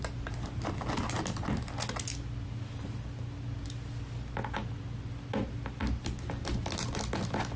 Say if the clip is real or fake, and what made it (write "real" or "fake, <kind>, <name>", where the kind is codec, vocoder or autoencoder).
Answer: real